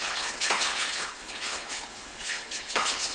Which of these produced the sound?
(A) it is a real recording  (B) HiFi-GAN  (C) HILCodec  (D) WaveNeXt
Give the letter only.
C